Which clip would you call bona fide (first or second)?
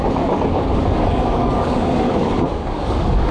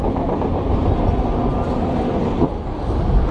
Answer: second